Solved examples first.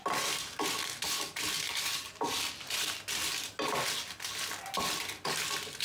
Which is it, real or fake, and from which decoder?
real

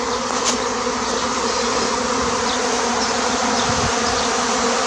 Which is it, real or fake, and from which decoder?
real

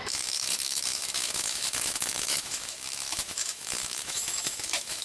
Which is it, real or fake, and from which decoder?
fake, autoencoder, DAC-VAE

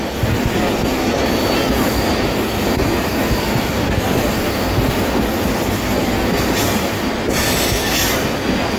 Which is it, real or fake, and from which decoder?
real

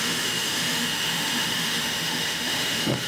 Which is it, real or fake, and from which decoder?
fake, autoencoder, DAC-VAE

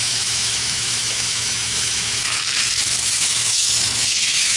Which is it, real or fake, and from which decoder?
fake, autoencoder, DAC-VAE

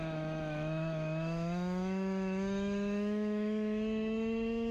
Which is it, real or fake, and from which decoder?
fake, autoencoder, DAC-VAE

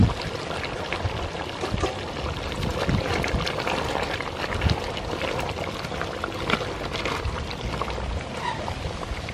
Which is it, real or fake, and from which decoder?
real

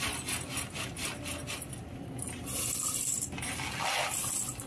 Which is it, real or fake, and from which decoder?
real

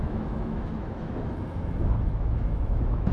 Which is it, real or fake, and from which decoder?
fake, autoencoder, DAC-VAE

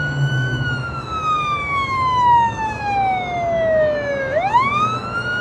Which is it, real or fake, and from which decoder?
fake, autoencoder, DAC-VAE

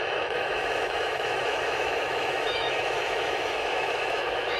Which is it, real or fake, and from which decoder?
fake, autoencoder, DAC-VAE